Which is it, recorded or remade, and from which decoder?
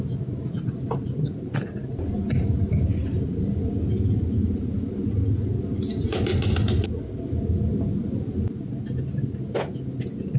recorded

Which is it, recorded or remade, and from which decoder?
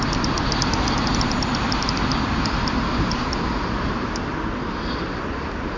recorded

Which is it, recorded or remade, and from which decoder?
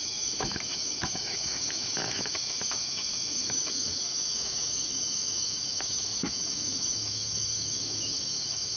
remade, autoencoder, DAC-VAE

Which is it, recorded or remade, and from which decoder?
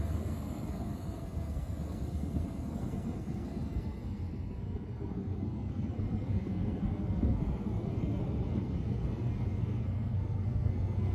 remade, codec, SNAC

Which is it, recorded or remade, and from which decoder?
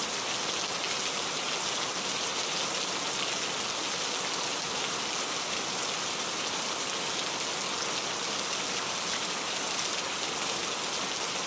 recorded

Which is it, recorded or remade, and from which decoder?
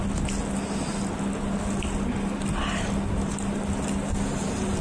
recorded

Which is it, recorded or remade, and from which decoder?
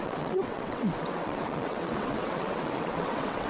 remade, vocoder, WaveNeXt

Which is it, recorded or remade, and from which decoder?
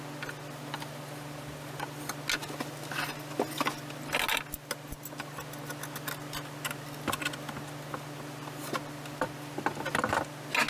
recorded